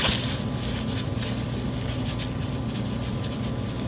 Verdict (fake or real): real